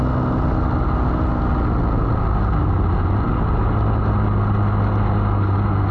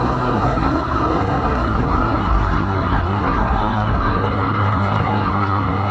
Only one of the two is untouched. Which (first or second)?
first